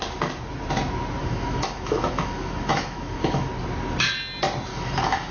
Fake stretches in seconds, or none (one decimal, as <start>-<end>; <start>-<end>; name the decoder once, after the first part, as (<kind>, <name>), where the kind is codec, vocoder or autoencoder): 1.2-3.5 (autoencoder, DAC-VAE); 4.7-5.3